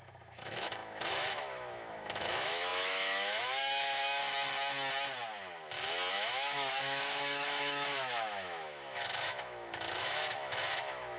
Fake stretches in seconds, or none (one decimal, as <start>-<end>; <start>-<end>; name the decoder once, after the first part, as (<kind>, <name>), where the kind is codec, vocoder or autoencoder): 0.0-4.2 (autoencoder, DAC-VAE); 6.1-11.2